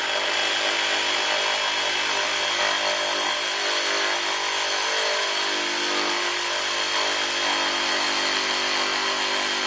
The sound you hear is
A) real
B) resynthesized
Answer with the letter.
A